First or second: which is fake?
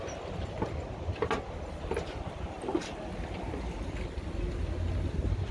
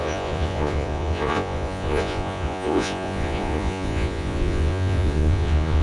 second